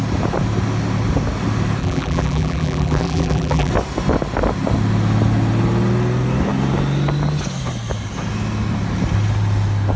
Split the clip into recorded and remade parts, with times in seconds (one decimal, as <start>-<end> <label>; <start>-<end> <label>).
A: 0.0-1.8 recorded; 1.8-3.7 remade; 3.7-10.0 recorded